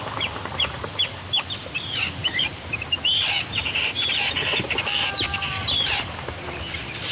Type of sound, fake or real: fake